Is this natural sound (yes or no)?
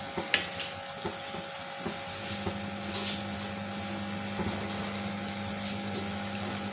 yes